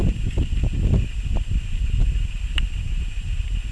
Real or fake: real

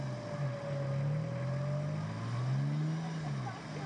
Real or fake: real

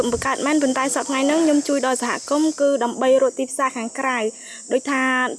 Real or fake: real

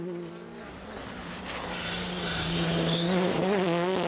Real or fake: real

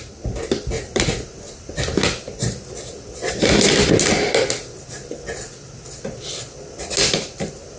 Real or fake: real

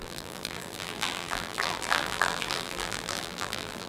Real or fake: fake